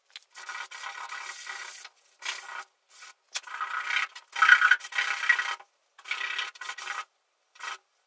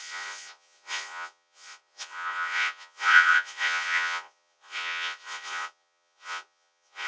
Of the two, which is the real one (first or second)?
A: first